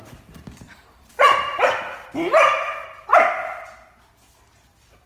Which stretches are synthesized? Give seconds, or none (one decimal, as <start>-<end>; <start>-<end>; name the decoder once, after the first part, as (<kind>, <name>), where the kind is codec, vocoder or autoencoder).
0.0-3.1 (vocoder, BigVGAN v2); 4.1-5.1